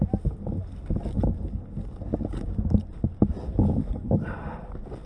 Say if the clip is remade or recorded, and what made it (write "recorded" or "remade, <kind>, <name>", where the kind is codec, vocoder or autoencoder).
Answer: recorded